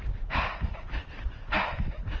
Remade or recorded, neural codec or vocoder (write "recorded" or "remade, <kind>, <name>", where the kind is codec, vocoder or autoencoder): recorded